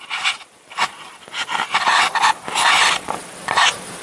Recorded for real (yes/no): yes